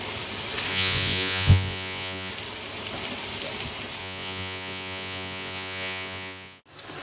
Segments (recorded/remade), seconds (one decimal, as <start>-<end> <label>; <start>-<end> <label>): 0.0-0.7 recorded; 0.7-2.3 remade; 2.3-4.0 recorded; 4.0-6.6 remade; 6.6-7.0 recorded